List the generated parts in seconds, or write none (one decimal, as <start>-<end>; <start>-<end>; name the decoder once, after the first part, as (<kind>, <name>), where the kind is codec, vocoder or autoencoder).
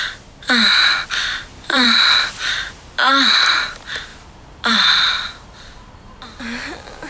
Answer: 1.5-2.3 (vocoder, BigVGAN v2); 4.1-5.9